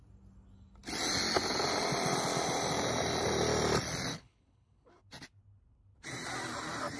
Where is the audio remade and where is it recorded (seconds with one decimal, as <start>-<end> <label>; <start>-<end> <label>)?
0.0-4.1 recorded; 4.1-5.0 remade; 5.0-7.0 recorded